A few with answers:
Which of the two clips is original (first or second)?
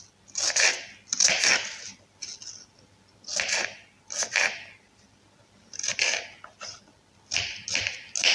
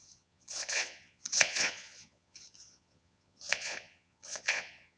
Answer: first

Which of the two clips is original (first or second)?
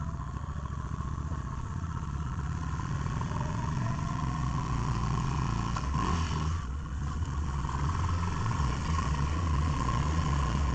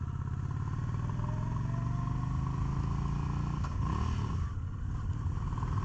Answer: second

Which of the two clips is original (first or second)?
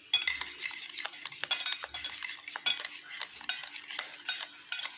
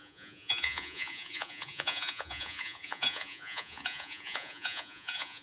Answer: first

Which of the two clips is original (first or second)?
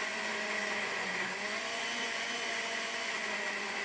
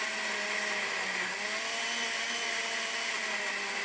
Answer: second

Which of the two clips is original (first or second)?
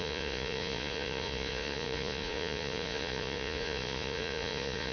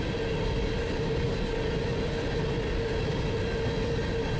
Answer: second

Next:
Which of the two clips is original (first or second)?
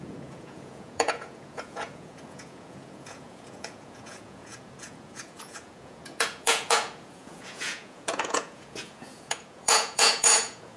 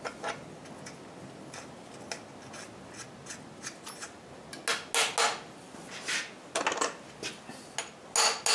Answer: second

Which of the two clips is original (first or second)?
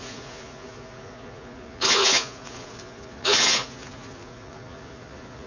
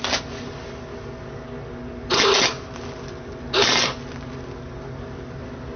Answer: second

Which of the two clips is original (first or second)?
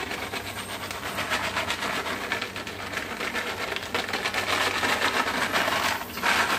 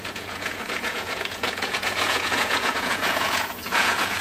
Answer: first